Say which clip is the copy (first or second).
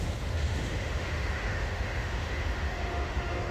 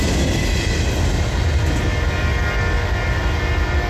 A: first